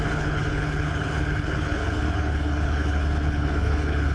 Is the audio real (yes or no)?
no